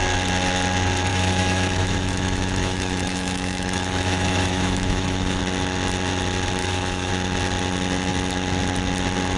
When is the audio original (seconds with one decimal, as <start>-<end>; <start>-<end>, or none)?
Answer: 0.0-1.1; 5.4-6.6; 7.1-9.4